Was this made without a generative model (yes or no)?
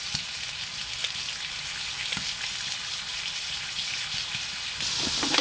yes